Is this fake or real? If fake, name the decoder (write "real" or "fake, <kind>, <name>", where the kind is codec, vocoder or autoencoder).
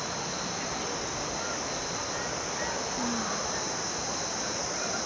real